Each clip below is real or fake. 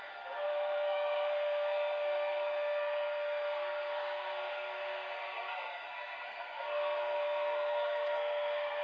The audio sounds fake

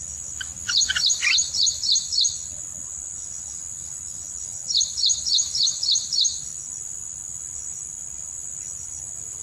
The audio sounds real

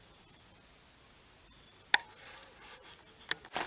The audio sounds real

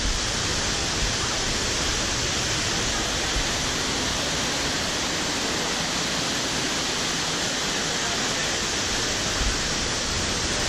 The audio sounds real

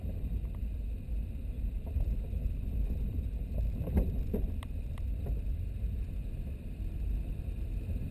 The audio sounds fake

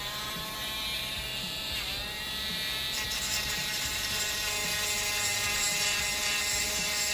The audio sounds fake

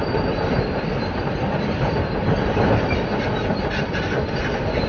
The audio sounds real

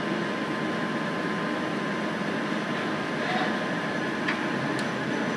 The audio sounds real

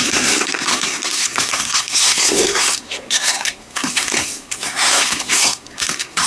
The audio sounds fake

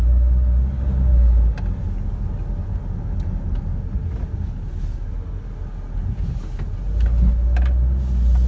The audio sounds real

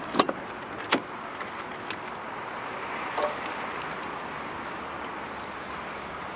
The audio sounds real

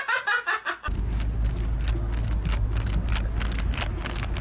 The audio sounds real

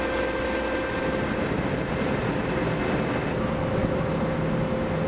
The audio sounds real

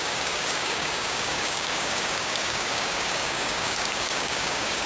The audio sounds fake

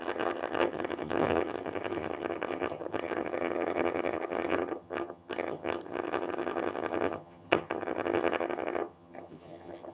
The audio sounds fake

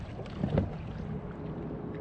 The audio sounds real